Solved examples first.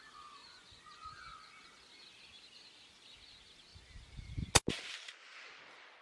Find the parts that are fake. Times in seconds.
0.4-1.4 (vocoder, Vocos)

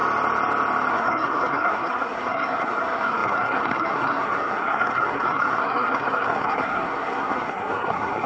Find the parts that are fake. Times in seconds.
0.9-8.3 (codec, SNAC)

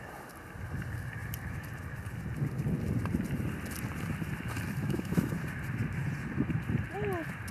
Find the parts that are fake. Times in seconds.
4.8-5.3 (autoencoder, DAC-VAE)

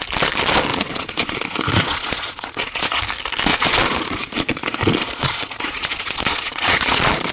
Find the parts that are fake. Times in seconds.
0.7-3.0 (vocoder, Vocos); 3.5-7.3

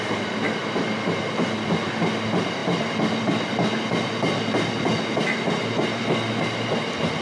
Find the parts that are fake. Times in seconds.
none

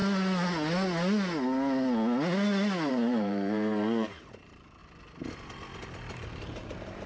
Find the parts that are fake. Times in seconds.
2.9-4.8 (vocoder, BigVGAN v2); 5.8-7.1

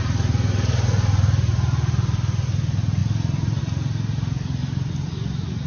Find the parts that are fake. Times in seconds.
none